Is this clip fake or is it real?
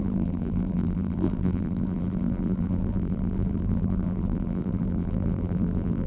fake